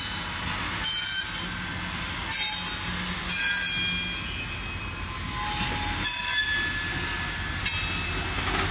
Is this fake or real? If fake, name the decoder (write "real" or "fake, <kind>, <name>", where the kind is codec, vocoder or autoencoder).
real